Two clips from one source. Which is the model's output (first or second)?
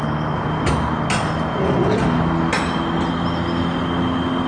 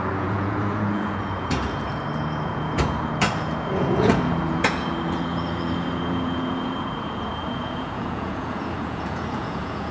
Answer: second